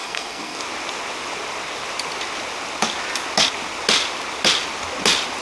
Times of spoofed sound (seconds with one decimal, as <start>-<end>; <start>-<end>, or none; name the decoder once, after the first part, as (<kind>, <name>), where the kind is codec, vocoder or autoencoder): 0.0-0.6 (codec, SNAC)